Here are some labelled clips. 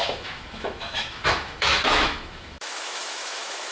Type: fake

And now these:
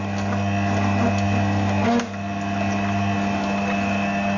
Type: real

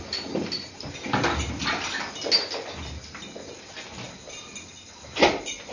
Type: real